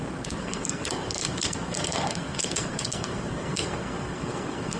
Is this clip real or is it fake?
fake